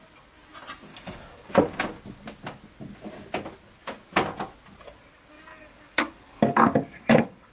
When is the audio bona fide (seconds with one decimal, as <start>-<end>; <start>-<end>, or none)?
0.0-0.9; 1.5-5.5